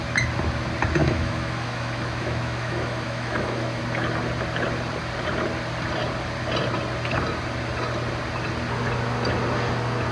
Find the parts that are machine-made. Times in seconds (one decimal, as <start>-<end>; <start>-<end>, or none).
1.0-3.8